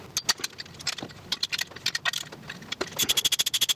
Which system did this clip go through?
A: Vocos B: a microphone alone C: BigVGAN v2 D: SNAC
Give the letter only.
B